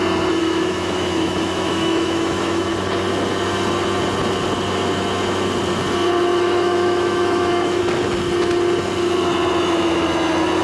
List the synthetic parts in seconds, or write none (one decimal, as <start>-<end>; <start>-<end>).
0.4-2.7; 6.3-7.8